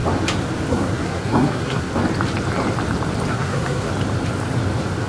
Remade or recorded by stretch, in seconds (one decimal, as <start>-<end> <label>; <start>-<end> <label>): 0.0-0.7 recorded; 0.7-1.9 remade; 1.9-3.3 recorded; 3.3-3.9 remade; 3.9-5.1 recorded